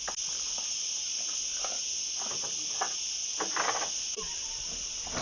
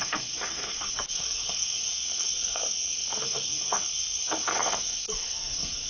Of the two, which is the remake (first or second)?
second